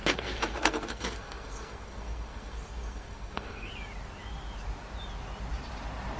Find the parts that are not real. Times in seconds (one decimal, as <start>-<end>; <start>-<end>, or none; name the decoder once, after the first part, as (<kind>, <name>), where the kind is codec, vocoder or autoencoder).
0.0-3.7 (codec, SNAC)